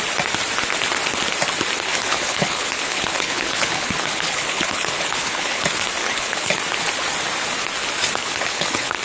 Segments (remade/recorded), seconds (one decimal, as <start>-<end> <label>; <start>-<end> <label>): 0.0-1.9 recorded; 1.9-5.6 remade; 5.6-6.0 recorded; 6.0-6.6 remade; 6.6-8.2 recorded; 8.2-9.0 remade